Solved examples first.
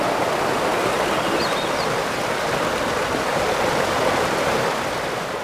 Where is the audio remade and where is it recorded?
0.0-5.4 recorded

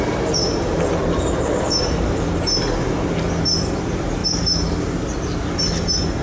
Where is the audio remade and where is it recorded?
0.0-4.2 remade; 4.2-6.2 recorded